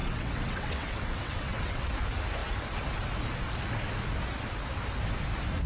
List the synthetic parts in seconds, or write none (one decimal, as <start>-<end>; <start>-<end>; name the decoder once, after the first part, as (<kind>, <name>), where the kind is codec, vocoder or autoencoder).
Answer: 0.0-1.9 (vocoder, WaveNeXt)